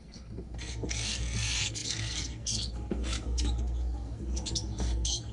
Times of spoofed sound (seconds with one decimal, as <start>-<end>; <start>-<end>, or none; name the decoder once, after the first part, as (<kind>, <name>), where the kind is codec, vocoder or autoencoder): 0.0-5.3 (codec, SNAC)